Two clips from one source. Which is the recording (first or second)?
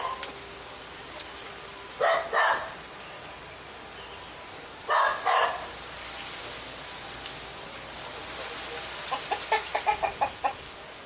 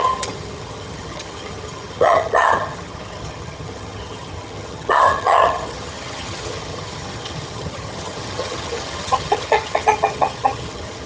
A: first